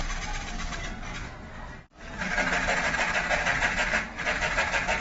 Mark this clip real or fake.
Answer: real